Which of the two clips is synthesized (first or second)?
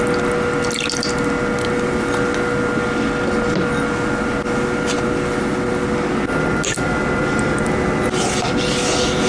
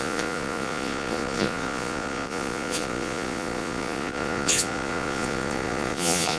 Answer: second